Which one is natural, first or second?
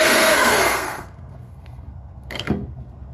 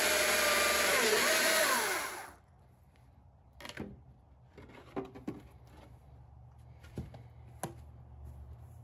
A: second